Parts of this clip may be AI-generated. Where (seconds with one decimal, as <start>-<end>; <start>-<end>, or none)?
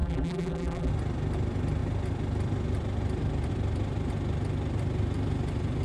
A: 0.0-0.9